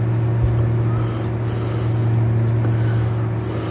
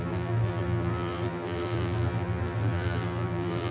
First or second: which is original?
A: first